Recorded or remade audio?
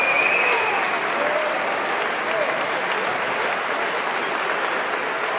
recorded